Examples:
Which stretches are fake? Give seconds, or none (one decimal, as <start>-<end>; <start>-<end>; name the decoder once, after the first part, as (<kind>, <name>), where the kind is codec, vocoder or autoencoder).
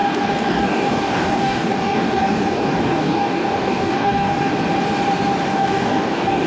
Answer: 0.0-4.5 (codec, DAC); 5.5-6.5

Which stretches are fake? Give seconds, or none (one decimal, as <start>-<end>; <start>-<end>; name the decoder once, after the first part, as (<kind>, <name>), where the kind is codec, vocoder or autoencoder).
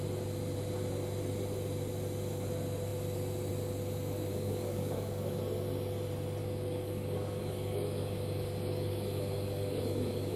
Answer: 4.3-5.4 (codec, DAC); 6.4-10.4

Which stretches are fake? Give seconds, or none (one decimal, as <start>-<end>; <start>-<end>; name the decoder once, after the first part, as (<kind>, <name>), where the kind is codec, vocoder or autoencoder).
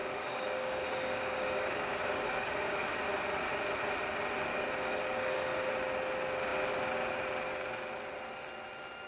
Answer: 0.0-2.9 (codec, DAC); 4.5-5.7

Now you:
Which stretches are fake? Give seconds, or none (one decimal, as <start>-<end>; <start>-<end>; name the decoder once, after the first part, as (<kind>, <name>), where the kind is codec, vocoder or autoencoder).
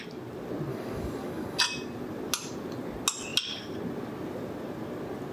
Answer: 0.7-1.6 (codec, DAC)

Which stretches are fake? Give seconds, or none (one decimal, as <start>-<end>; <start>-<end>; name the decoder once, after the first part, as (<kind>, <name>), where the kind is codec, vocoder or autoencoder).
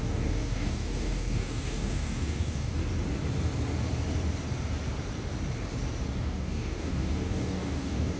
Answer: 0.0-2.8 (codec, DAC); 6.2-8.2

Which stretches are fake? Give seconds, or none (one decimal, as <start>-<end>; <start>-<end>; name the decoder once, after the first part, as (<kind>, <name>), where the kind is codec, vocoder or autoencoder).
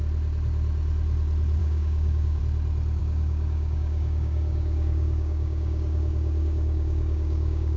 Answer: 1.6-2.4 (codec, DAC); 3.0-7.8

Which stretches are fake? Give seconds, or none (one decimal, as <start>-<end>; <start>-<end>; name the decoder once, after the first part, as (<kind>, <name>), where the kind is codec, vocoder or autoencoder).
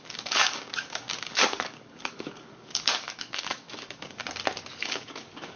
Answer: 0.0-4.2 (codec, DAC); 4.8-5.6